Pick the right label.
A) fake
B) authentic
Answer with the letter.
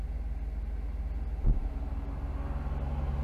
B